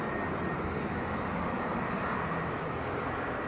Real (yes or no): yes